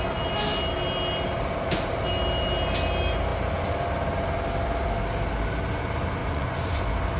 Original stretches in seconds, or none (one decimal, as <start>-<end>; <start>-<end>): 0.0-6.2; 6.8-7.2